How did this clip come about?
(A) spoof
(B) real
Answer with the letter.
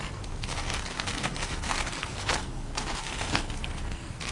A